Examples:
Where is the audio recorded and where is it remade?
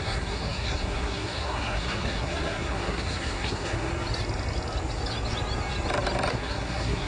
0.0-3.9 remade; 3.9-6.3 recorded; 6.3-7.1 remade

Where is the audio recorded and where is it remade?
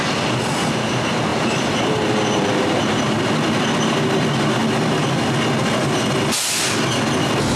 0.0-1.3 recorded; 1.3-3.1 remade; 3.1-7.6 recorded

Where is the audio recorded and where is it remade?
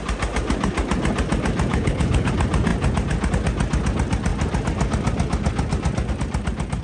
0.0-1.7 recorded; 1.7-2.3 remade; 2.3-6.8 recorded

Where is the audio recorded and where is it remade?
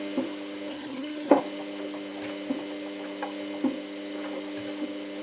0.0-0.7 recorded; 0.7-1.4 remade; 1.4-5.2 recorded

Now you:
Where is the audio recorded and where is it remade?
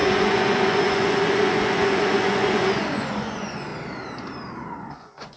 0.0-3.7 remade; 3.7-4.7 recorded; 4.7-5.4 remade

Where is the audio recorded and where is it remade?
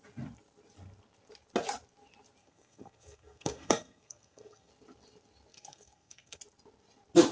0.0-2.4 recorded; 2.4-4.7 remade; 4.7-5.5 recorded; 5.5-6.4 remade; 6.4-7.3 recorded